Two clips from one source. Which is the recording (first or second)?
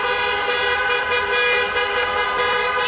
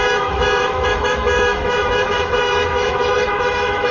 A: first